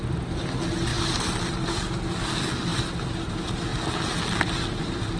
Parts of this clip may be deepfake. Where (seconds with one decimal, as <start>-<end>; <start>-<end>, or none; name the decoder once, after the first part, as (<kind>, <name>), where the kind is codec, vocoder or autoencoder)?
none